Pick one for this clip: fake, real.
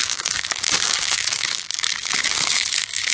fake